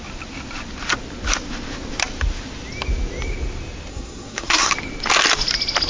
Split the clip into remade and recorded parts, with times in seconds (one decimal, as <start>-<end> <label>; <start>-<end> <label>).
0.0-3.9 recorded; 3.9-4.7 remade; 4.7-5.9 recorded